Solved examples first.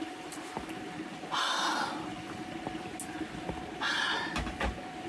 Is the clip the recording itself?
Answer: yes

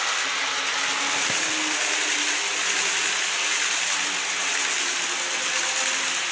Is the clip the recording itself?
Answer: yes